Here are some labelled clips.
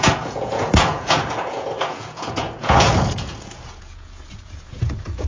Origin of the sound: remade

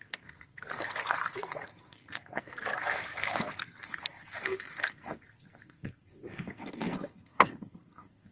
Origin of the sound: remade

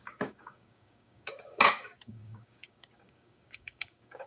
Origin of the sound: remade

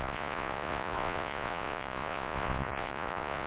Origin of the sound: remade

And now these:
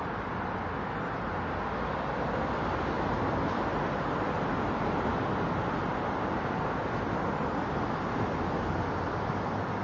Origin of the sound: recorded